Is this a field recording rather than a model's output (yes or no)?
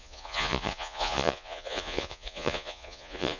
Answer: no